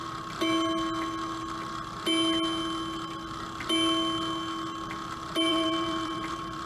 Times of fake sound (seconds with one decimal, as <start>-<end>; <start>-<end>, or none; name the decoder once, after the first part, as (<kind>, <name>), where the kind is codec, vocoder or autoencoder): 5.5-6.7 (vocoder, BigVGAN v2)